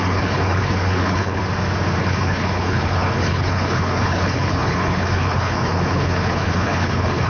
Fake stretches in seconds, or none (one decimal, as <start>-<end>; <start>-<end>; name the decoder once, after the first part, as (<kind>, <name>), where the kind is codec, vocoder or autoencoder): 0.0-1.4 (codec, HILCodec); 2.0-7.3